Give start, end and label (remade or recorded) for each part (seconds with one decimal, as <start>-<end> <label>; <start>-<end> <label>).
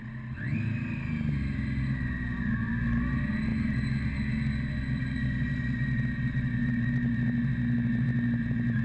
0.0-8.8 recorded